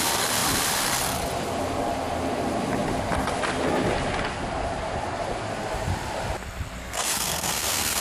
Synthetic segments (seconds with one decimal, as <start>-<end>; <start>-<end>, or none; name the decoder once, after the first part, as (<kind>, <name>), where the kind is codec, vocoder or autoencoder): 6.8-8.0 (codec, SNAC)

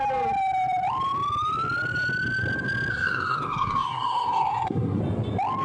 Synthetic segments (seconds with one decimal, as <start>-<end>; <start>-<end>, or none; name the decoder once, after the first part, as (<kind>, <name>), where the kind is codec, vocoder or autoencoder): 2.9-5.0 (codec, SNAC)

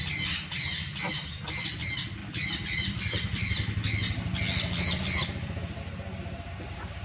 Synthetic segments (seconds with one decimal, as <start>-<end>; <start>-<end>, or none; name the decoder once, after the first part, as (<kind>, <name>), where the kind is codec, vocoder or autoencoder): none